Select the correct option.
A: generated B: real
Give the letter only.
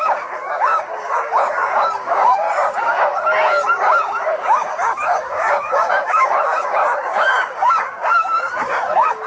A